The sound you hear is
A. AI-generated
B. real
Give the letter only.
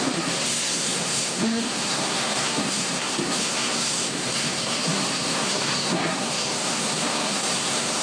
A